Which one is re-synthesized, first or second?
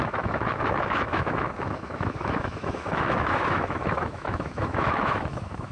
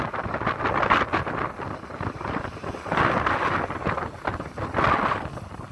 first